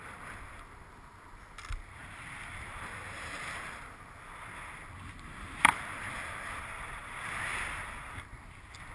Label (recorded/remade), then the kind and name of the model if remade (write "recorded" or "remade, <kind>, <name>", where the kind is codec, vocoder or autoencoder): recorded